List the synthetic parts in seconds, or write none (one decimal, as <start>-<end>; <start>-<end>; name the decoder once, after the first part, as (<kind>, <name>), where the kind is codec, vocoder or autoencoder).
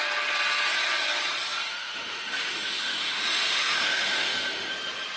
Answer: 1.6-4.7 (autoencoder, DAC-VAE)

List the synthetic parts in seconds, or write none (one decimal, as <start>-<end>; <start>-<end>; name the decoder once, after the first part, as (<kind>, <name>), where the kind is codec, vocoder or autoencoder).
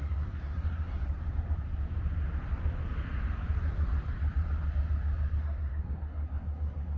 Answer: 0.0-1.2 (codec, SNAC); 5.4-7.0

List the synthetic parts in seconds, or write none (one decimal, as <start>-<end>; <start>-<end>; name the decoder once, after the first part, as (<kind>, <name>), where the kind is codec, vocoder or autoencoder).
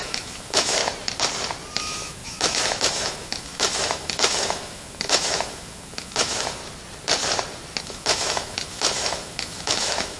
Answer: 0.0-0.8 (autoencoder, DAC-VAE); 1.8-6.6; 7.8-10.2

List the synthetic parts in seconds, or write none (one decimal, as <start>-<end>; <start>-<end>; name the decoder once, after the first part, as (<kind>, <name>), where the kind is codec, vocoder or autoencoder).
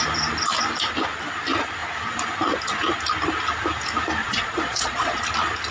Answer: 4.2-5.2 (vocoder, Vocos)